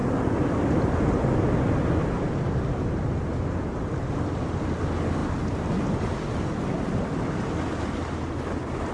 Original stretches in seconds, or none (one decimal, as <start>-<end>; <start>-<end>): 0.0-8.9

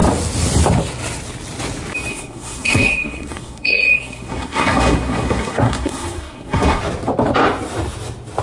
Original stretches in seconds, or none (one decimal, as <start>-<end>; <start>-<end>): 0.0-2.1; 6.8-8.4

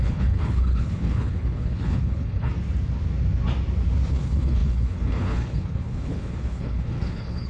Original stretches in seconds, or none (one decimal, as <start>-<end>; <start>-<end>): 2.5-4.1

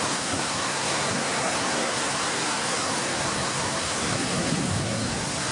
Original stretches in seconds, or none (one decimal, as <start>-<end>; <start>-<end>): none

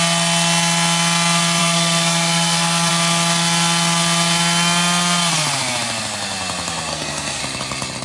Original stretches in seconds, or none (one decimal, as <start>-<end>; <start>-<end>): 0.0-1.6; 2.9-6.9; 7.4-8.0

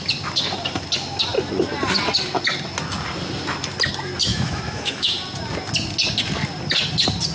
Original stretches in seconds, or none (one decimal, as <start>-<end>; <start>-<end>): 0.0-4.3; 5.1-7.3

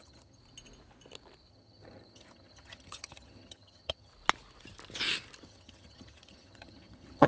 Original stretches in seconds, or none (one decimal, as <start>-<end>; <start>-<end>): 0.4-1.5; 4.1-5.4

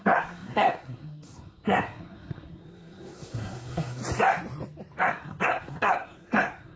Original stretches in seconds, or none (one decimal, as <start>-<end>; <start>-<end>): 4.0-5.0